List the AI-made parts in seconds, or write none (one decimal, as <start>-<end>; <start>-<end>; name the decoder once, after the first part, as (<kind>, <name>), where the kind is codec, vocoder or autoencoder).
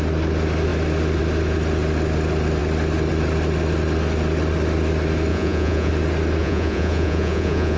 5.3-5.9 (vocoder, Vocos); 6.4-7.8